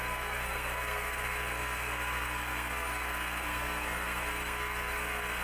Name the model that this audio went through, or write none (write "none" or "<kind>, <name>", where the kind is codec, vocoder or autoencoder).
codec, SNAC